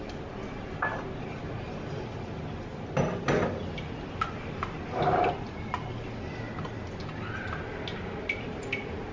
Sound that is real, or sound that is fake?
real